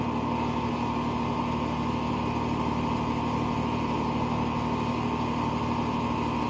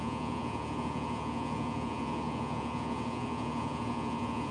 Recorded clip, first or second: first